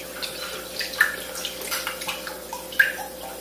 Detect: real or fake real